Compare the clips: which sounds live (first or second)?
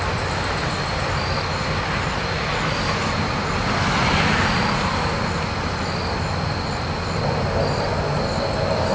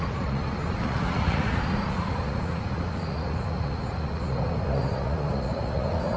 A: first